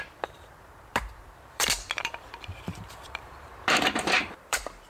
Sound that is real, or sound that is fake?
fake